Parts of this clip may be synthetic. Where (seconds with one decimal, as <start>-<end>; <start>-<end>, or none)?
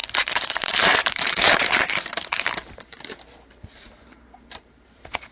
0.0-5.3